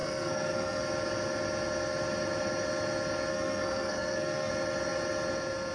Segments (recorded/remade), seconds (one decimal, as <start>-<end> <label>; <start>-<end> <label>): 0.0-0.8 remade; 0.8-3.3 recorded; 3.3-4.5 remade; 4.5-5.7 recorded